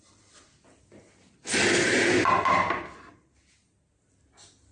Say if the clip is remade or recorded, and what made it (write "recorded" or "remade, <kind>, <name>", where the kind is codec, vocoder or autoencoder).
recorded